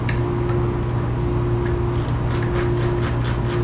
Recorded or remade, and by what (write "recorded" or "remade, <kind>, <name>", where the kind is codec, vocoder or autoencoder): recorded